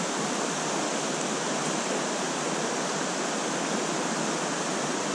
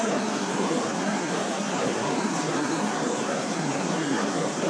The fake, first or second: second